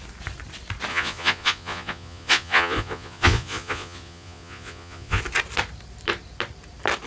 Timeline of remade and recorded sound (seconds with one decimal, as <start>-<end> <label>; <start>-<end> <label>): 0.0-0.9 recorded; 0.9-5.2 remade; 5.2-7.1 recorded